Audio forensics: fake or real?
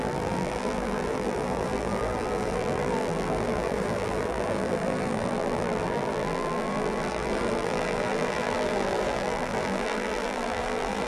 fake